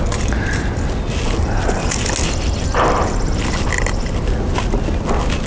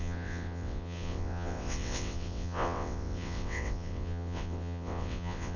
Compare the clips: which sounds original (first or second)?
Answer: first